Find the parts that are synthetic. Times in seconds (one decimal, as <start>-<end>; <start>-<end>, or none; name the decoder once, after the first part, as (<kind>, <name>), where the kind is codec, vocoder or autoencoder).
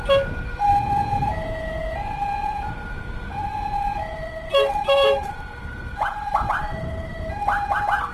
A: 0.0-0.7 (vocoder, BigVGAN v2); 4.8-8.1